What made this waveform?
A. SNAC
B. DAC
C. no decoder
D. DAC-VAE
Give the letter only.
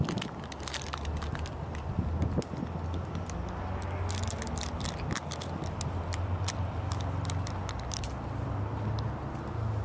C